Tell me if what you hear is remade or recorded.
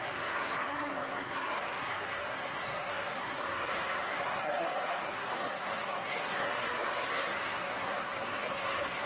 remade